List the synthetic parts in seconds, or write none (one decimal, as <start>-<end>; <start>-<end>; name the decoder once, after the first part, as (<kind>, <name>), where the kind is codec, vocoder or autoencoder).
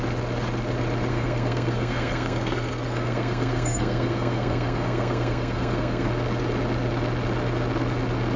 1.1-6.1 (codec, SNAC)